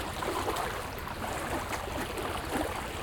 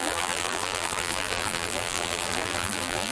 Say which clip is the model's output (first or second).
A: second